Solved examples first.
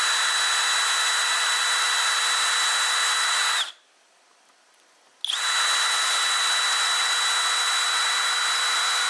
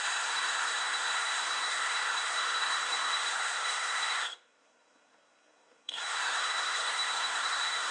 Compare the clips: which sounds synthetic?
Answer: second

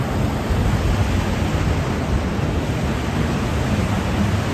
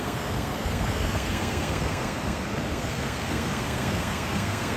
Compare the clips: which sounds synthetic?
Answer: second